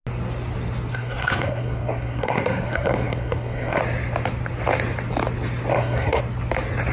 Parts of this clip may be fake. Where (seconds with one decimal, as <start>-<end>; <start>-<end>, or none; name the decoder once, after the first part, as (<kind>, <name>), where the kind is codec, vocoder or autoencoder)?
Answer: 0.9-3.8 (codec, SNAC); 5.7-6.2